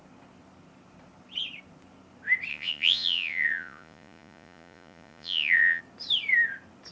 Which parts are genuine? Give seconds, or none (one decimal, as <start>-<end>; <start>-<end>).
0.0-2.5; 5.8-6.9